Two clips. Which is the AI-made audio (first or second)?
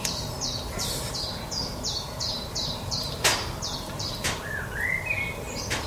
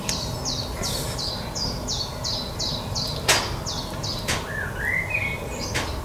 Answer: first